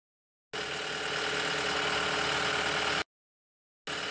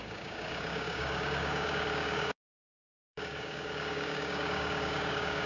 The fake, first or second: second